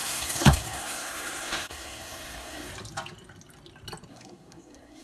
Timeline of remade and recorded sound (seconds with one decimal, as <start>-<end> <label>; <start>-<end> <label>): 0.0-2.7 remade; 2.7-4.1 recorded; 4.1-5.0 remade